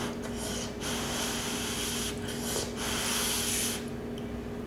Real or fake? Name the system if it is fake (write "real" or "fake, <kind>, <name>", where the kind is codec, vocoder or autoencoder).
real